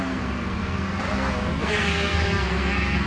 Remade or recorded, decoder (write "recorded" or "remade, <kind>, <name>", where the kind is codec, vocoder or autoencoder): remade, codec, SNAC